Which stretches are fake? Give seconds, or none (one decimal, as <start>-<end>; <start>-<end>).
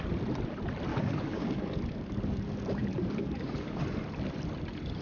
0.9-3.8